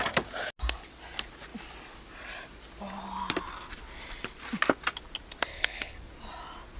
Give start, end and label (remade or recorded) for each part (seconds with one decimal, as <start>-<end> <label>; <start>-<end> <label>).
0.0-5.5 recorded; 5.5-6.0 remade; 6.0-6.8 recorded